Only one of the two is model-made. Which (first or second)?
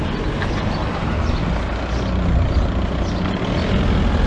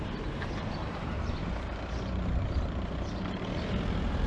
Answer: second